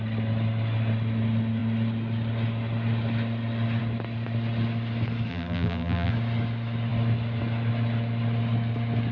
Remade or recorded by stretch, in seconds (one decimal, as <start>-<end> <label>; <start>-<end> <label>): 0.0-5.3 recorded; 5.3-6.1 remade; 6.1-9.1 recorded